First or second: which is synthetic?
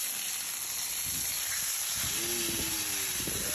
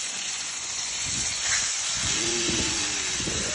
second